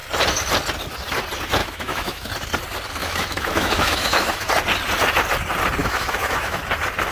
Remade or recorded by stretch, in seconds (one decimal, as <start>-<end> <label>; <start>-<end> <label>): 0.0-1.6 recorded; 1.6-2.3 remade; 2.3-3.0 recorded; 3.0-4.5 remade; 4.5-5.8 recorded; 5.8-6.6 remade; 6.6-7.1 recorded